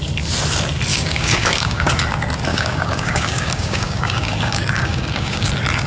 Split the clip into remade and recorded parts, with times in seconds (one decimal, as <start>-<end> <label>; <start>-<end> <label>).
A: 0.0-0.9 recorded; 0.9-1.9 remade; 1.9-2.5 recorded; 2.5-5.5 remade; 5.5-5.9 recorded